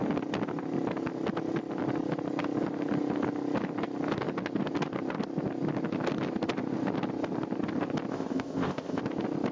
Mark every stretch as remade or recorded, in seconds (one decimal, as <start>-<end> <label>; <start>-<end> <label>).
0.0-8.1 recorded; 8.1-9.0 remade; 9.0-9.5 recorded